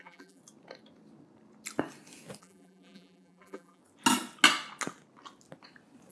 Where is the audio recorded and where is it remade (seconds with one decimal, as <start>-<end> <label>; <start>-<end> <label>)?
0.0-0.4 remade; 0.4-2.4 recorded; 2.4-3.8 remade; 3.8-6.1 recorded